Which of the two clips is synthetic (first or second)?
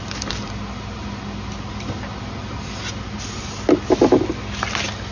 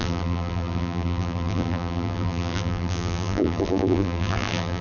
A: second